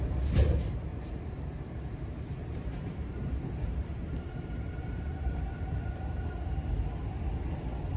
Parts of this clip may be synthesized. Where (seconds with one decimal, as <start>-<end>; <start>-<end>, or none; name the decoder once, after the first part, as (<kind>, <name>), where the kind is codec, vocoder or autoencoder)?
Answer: 0.9-5.4 (vocoder, BigVGAN v2)